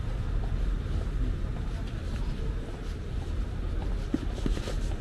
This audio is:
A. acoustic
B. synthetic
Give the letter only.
A